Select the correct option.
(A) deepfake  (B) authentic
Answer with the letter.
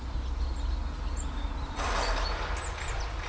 B